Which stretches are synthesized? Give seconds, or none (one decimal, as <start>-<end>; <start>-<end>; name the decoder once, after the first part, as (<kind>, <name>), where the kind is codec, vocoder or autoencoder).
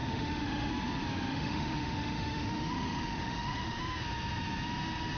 0.0-0.7 (autoencoder, DAC-VAE); 1.3-3.8